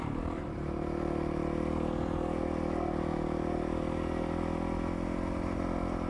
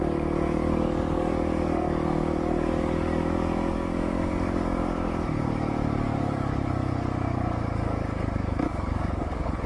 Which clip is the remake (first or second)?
second